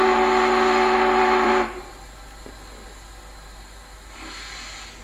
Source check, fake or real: real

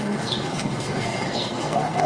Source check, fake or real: fake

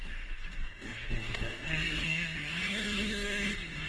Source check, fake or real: fake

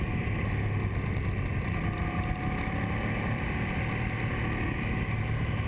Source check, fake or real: real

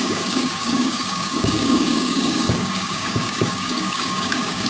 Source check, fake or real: fake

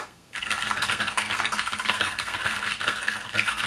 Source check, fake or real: fake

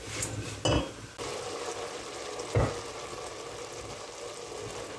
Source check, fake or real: real